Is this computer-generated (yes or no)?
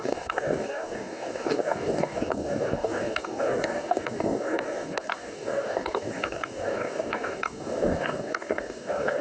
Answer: yes